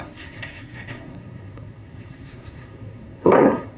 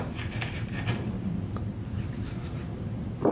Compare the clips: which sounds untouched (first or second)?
second